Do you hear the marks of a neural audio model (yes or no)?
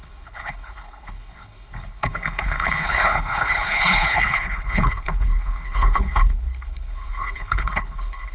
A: yes